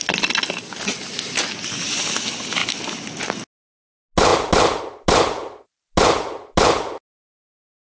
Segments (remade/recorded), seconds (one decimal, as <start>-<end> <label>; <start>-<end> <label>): 0.0-7.8 recorded

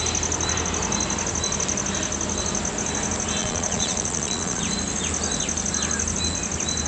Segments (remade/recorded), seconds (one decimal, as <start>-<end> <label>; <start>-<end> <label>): 0.0-3.4 recorded; 3.4-4.6 remade; 4.6-6.9 recorded

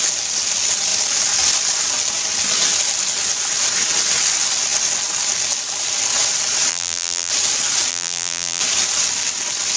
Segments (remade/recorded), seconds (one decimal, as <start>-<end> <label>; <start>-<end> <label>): 0.0-6.7 recorded; 6.7-7.3 remade; 7.3-7.9 recorded; 7.9-8.6 remade; 8.6-9.8 recorded

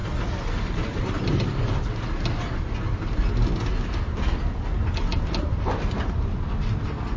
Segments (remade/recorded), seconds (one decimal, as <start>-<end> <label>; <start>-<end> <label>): 0.0-7.2 recorded

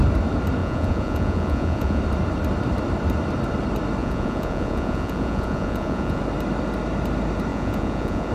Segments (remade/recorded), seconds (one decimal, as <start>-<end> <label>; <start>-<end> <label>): 0.0-0.6 recorded; 0.6-2.0 remade; 2.0-4.0 recorded; 4.0-6.2 remade; 6.2-7.5 recorded; 7.5-8.3 remade